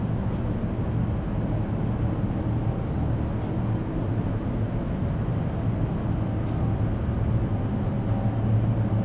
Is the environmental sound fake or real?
real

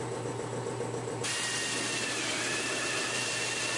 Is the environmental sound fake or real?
real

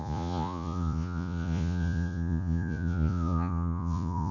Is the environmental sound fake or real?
fake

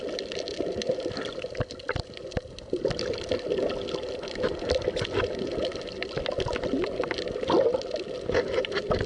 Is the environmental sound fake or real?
real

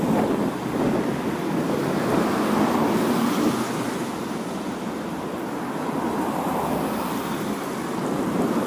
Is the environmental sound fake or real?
real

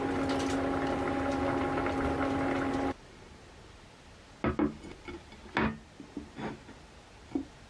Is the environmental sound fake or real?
real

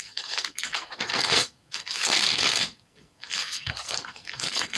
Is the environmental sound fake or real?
fake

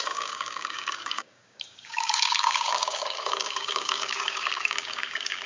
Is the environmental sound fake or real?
fake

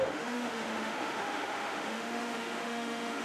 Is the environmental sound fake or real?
fake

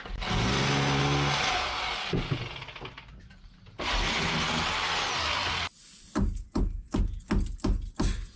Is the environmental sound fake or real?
real